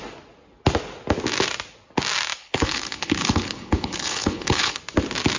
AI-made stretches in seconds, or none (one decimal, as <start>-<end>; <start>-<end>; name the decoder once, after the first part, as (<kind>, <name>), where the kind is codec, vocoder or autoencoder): 2.4-4.8 (codec, HILCodec)

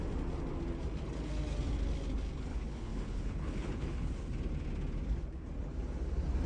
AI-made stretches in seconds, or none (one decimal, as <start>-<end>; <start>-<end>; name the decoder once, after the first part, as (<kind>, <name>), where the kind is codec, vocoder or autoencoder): 2.5-4.1 (codec, HILCodec)

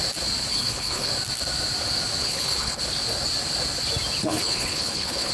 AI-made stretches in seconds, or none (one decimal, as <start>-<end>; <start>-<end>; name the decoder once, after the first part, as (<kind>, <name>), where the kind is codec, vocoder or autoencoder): 0.5-1.1 (codec, HILCodec); 2.2-2.8; 4.2-5.3

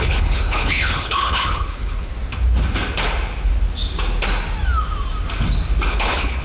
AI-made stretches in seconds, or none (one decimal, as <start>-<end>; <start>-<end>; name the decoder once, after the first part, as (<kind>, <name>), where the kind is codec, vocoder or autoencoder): 0.0-2.1 (codec, HILCodec); 5.9-6.4